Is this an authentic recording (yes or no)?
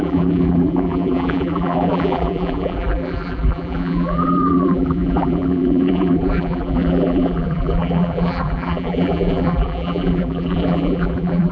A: no